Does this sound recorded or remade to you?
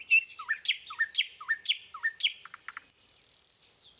recorded